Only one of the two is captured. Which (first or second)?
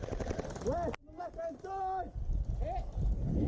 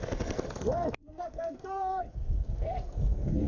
first